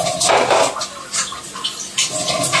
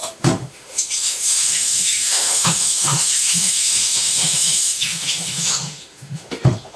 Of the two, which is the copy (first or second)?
second